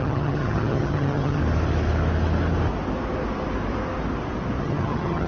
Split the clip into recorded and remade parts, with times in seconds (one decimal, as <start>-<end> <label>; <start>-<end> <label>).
0.0-1.4 remade; 1.4-4.6 recorded; 4.6-5.3 remade